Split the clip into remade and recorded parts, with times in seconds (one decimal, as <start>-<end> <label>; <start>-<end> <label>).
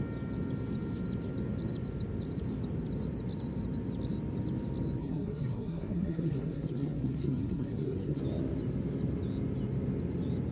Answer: 0.0-5.0 recorded; 5.0-8.2 remade; 8.2-10.5 recorded